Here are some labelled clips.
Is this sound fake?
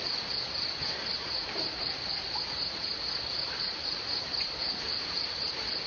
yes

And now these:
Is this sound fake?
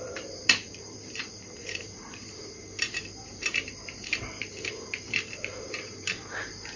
yes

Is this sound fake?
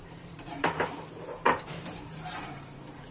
yes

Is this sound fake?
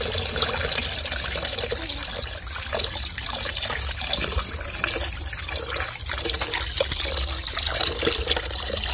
no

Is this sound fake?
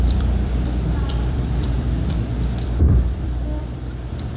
yes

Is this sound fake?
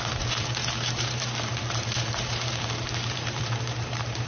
yes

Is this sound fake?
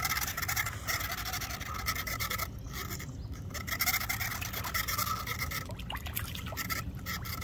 no